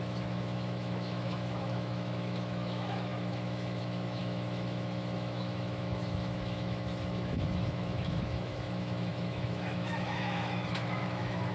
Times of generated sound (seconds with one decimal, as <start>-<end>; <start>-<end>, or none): 0.0-11.5